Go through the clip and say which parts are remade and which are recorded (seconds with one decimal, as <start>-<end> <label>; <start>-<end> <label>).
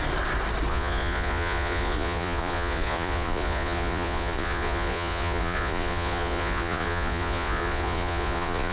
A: 0.0-0.7 recorded; 0.7-8.7 remade